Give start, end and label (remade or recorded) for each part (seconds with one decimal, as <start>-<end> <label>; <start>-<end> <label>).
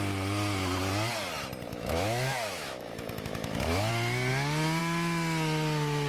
0.0-1.7 recorded; 1.7-3.9 remade; 3.9-6.1 recorded